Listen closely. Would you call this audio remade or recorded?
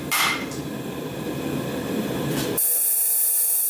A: remade